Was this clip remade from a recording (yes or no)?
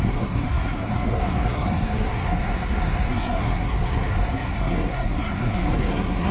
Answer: yes